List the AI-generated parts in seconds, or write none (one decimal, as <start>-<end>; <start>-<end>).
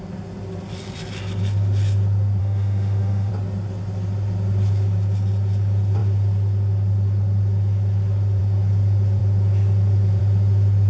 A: 2.4-3.3